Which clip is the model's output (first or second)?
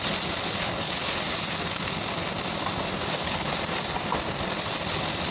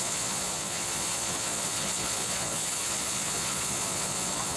second